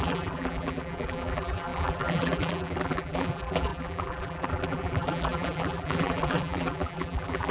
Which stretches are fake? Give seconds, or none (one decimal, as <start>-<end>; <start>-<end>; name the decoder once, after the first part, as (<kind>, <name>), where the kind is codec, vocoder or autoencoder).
0.0-7.5 (vocoder, BigVGAN v2)